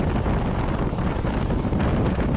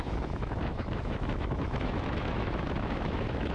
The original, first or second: first